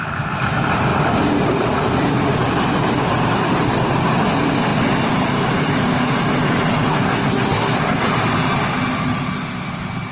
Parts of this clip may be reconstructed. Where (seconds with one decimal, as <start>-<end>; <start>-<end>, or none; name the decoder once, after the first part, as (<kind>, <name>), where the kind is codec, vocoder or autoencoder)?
6.9-8.1 (codec, SNAC)